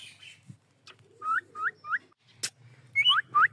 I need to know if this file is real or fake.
real